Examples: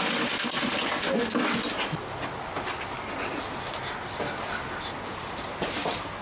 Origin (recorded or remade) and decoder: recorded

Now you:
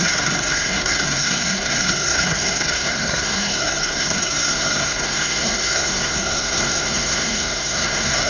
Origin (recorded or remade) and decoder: remade, codec, SNAC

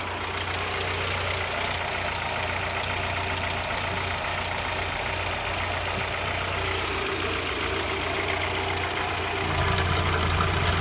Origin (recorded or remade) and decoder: recorded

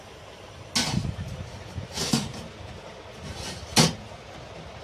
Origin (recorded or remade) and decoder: recorded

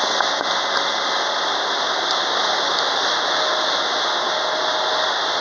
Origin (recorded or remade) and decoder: recorded